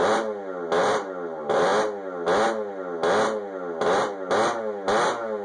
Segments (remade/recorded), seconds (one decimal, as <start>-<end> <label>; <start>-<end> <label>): 0.0-5.4 recorded